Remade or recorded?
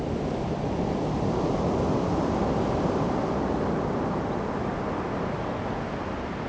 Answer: recorded